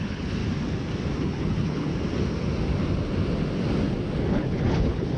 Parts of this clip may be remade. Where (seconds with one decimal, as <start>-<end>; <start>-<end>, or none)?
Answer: 0.0-0.4; 1.2-1.9; 4.3-5.2